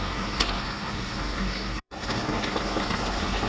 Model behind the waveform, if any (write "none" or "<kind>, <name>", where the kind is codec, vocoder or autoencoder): codec, SNAC